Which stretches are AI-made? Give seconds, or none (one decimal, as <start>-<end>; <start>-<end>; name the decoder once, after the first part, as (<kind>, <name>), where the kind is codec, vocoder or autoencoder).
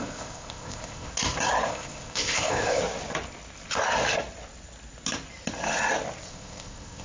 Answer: 0.0-1.1 (codec, ZipCodec); 1.7-2.8; 6.3-7.0